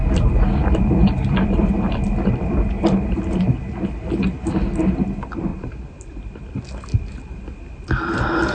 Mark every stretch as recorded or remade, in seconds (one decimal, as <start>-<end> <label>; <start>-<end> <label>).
0.0-3.5 remade; 3.5-5.5 recorded; 5.5-6.6 remade; 6.6-8.5 recorded